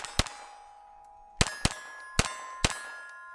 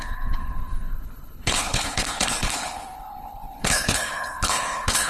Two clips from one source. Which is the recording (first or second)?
first